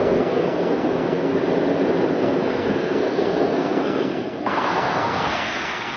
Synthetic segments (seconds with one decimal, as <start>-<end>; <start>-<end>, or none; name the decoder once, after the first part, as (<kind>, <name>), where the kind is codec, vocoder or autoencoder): 0.0-1.3 (codec, SNAC); 2.1-6.0